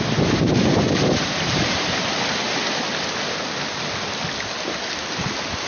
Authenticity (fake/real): real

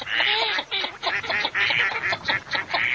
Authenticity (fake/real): real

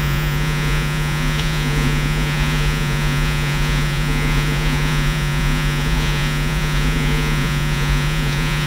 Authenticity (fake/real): fake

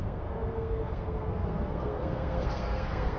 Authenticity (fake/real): fake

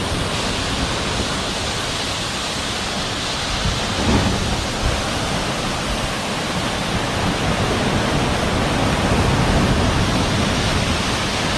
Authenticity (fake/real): real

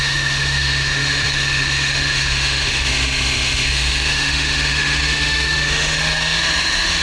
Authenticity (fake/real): fake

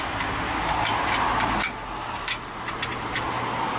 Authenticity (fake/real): real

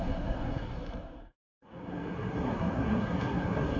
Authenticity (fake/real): fake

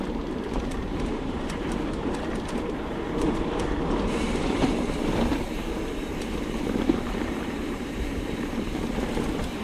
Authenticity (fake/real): fake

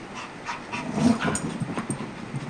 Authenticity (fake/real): real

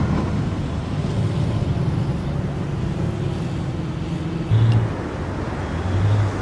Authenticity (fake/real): real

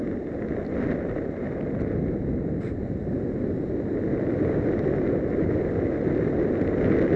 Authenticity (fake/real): real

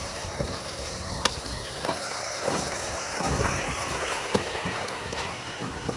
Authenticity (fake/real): fake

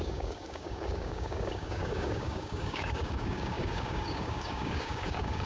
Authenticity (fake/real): fake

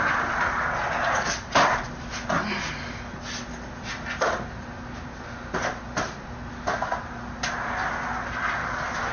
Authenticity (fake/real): real